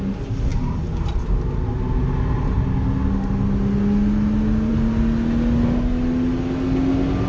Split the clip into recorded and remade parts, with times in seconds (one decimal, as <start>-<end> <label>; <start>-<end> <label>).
0.0-7.3 recorded

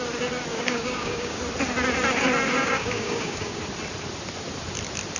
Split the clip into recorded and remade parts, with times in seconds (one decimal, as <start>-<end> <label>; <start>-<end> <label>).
0.0-0.5 recorded; 0.5-1.4 remade; 1.4-2.6 recorded; 2.6-3.6 remade; 3.6-5.2 recorded

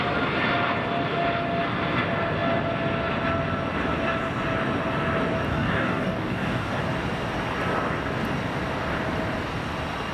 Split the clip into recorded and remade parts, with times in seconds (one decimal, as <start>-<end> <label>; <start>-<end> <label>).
0.0-5.5 recorded; 5.5-6.8 remade; 6.8-10.1 recorded

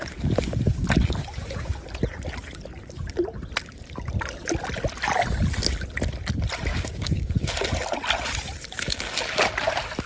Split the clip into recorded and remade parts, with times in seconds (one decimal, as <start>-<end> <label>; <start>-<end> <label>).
0.0-6.7 recorded; 6.7-7.5 remade; 7.5-10.1 recorded

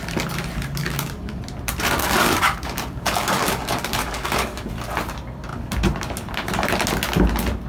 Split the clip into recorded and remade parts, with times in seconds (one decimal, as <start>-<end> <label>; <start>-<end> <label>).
0.0-0.8 recorded; 0.8-1.4 remade; 1.4-2.0 recorded; 2.0-4.7 remade; 4.7-7.7 recorded